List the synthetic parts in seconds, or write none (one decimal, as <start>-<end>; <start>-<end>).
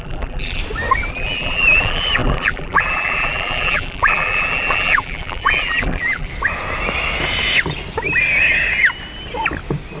0.0-0.6; 1.1-6.3